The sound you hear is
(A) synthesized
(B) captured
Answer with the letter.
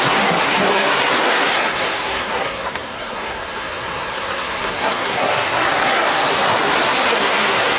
A